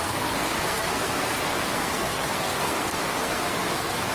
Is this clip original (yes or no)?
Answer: no